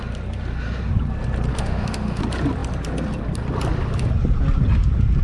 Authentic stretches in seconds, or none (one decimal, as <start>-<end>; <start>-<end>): 0.0-1.5; 2.2-5.2